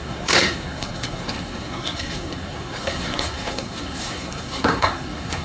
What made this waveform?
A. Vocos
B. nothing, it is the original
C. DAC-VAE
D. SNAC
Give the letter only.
D